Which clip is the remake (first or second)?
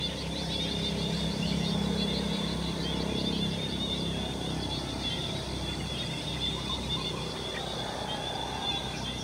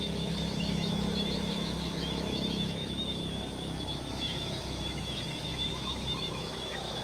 second